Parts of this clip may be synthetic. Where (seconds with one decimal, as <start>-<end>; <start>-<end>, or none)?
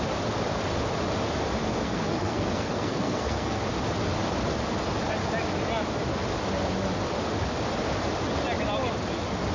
1.6-3.6